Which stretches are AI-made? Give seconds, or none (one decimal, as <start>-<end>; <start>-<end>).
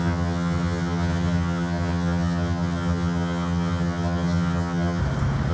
0.0-5.0